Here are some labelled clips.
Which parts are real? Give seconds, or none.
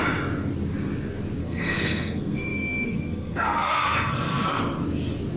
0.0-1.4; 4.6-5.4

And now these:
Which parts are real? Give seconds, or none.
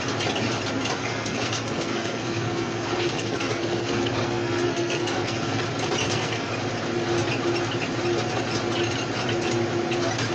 0.0-1.0; 5.6-6.0; 6.5-10.3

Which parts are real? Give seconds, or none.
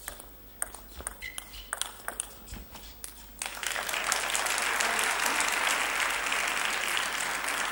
0.0-7.7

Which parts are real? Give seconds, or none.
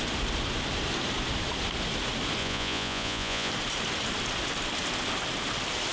0.0-2.4; 3.5-5.9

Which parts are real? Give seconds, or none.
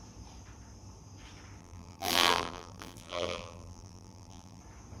0.0-1.6; 4.6-5.0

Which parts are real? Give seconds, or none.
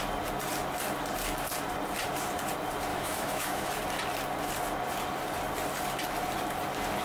0.0-2.9; 3.7-7.0